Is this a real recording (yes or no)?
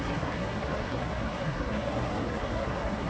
no